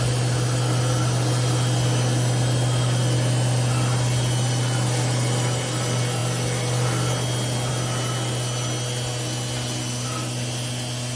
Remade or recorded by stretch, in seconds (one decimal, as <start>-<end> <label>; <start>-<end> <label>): 0.0-11.2 recorded